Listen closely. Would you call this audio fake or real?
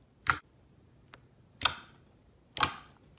real